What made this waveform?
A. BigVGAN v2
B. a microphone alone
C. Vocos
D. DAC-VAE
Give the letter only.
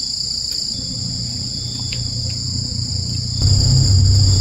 B